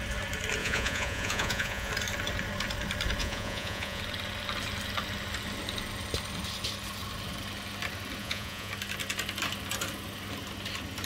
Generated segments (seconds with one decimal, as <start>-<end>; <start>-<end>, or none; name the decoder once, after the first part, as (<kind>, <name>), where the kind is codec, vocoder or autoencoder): 0.6-1.9 (vocoder, Vocos); 3.2-4.0; 8.2-8.7